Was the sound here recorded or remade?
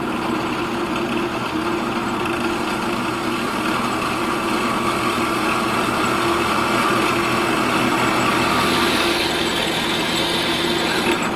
recorded